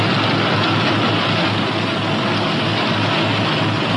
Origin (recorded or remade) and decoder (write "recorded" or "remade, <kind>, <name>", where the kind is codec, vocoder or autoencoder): recorded